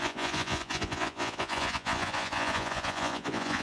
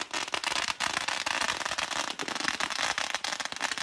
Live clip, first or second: second